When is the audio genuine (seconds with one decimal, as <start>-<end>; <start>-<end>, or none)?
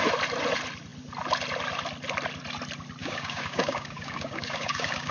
0.0-3.0